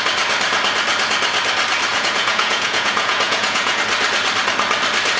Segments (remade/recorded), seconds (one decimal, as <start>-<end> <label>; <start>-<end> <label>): 0.0-1.9 recorded; 1.9-3.8 remade; 3.8-5.2 recorded